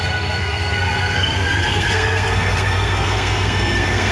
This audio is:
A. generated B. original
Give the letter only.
A